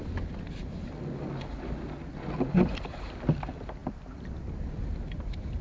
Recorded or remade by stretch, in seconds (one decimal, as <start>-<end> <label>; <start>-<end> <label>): 0.0-4.9 recorded; 4.9-5.6 remade